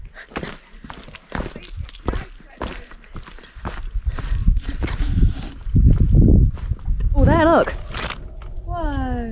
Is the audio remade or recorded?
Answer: recorded